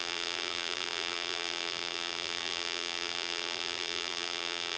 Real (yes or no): no